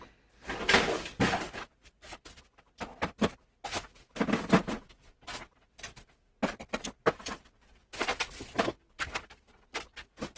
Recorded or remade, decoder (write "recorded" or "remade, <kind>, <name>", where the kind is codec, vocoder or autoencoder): recorded